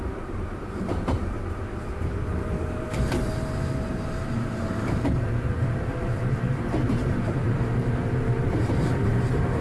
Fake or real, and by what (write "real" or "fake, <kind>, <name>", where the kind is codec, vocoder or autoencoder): fake, vocoder, BigVGAN v2